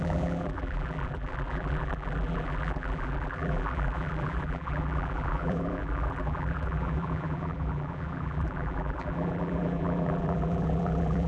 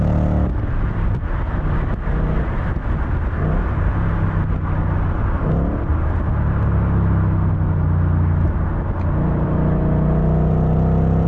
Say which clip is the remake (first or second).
first